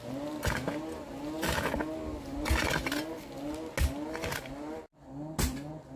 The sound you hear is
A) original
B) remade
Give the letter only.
A